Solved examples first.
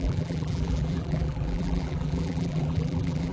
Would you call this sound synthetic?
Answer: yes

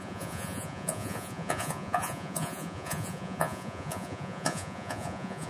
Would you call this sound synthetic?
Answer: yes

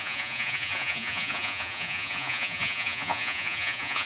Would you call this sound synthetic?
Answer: yes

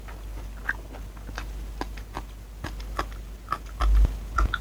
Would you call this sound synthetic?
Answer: no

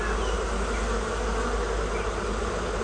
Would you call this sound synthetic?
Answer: no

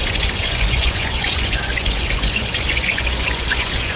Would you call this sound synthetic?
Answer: yes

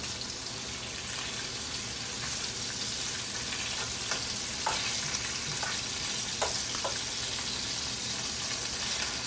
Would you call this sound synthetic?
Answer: no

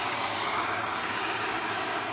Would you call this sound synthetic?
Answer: yes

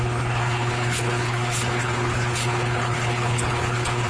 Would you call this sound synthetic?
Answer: yes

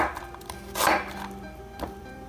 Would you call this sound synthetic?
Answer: yes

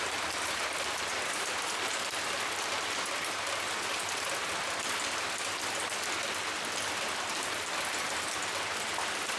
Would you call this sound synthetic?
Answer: no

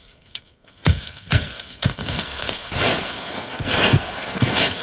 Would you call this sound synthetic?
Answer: yes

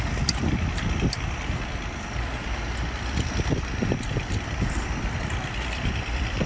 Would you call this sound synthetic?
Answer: yes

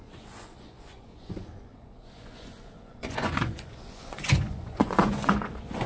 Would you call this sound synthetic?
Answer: yes